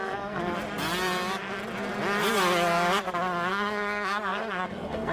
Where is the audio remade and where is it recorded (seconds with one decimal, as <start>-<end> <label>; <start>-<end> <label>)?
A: 0.0-0.4 remade; 0.4-3.5 recorded; 3.5-5.1 remade